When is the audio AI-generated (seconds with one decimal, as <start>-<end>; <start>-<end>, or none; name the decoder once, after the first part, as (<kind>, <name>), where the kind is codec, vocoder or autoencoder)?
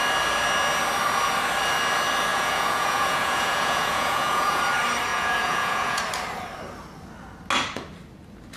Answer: 2.3-4.6 (vocoder, Vocos); 5.1-6.0